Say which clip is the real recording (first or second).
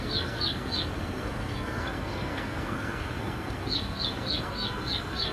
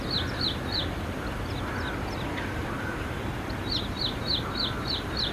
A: second